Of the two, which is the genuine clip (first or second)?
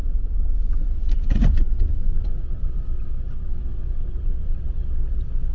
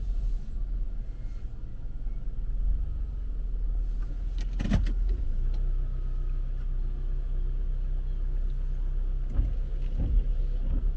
second